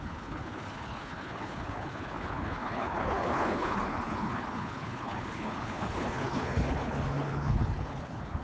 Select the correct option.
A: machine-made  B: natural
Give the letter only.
A